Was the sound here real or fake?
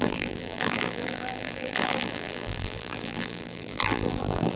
fake